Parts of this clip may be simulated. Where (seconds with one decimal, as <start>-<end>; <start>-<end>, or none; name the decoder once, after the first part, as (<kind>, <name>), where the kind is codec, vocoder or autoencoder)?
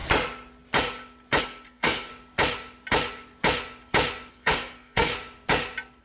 1.4-2.1 (codec, SNAC); 4.3-5.1